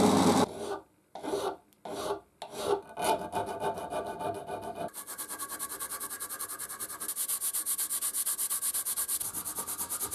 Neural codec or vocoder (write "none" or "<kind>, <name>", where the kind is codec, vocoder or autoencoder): none